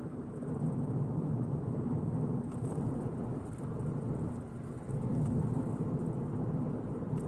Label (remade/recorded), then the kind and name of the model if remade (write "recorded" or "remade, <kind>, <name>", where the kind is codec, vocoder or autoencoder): remade, vocoder, BigVGAN v2